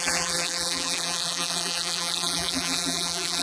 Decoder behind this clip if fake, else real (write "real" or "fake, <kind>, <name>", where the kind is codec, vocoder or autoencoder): fake, vocoder, BigVGAN v2